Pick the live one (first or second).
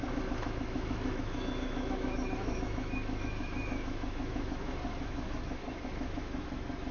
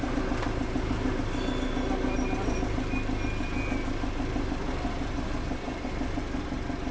second